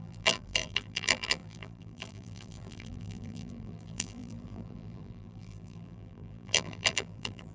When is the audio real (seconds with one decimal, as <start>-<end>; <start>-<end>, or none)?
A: none

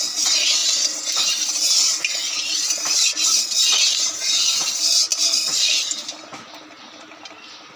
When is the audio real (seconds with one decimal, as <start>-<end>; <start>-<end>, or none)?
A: 0.0-5.1; 5.8-7.8

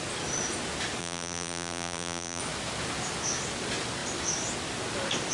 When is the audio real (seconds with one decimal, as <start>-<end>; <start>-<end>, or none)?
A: 0.0-1.0; 2.4-5.3

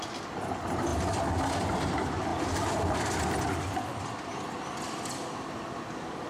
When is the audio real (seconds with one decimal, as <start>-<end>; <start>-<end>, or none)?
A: 0.0-2.3; 2.9-6.3

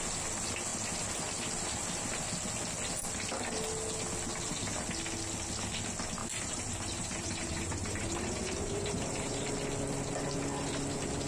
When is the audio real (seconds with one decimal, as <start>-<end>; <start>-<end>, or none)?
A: 0.0-6.2; 9.5-11.3

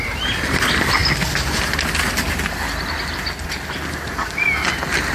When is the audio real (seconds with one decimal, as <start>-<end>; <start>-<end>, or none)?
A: 0.0-5.1

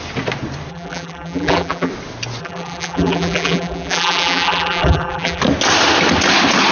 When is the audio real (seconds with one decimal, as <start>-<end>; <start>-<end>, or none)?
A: 0.0-0.7; 1.9-2.4; 5.4-6.7

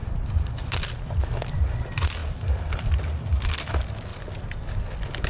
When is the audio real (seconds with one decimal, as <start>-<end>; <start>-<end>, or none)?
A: 0.8-4.1; 4.6-5.3